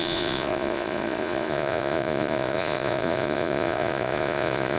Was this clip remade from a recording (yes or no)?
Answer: yes